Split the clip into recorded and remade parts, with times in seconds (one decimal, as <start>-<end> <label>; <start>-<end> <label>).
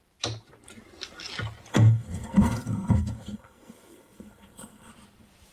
0.0-1.7 recorded; 1.7-4.9 remade; 4.9-5.5 recorded